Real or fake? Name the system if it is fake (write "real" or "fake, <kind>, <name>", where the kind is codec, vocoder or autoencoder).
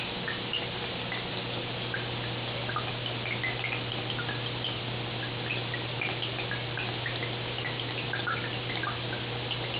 real